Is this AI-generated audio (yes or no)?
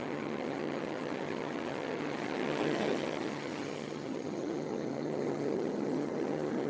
yes